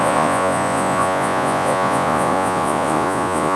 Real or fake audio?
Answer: fake